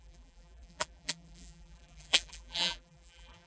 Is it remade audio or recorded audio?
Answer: remade